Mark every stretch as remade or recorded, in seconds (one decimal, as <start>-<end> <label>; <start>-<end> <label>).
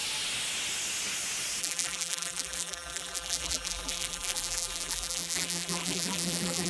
0.0-1.6 recorded; 1.6-6.7 remade